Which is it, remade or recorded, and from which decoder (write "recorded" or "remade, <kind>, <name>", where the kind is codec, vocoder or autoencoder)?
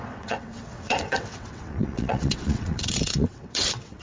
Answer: remade, vocoder, WaveNeXt